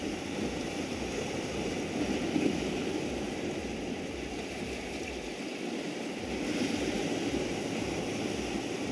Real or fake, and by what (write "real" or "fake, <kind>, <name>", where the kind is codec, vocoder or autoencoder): real